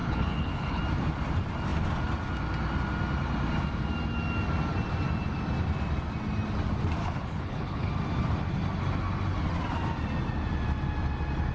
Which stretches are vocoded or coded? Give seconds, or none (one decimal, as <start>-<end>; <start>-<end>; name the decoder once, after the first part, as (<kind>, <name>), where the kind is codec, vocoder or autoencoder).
0.0-0.8 (codec, HILCodec); 7.0-7.9